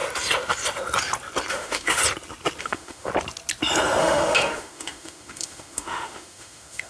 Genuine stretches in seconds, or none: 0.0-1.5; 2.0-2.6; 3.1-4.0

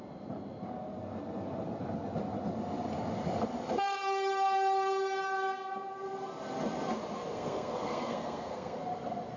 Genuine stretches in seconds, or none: 0.0-7.3; 8.8-9.4

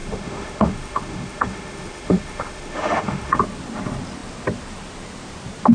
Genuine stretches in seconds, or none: 3.4-5.7

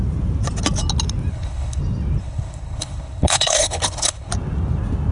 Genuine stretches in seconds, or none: 0.0-1.3; 1.8-2.2; 4.3-5.1